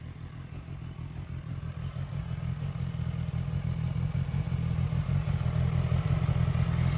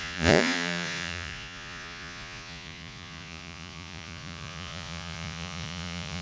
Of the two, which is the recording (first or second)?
first